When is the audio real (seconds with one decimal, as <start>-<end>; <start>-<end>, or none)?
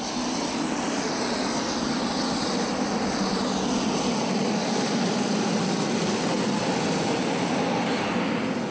0.0-8.7